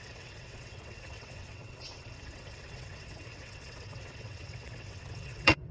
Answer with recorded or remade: remade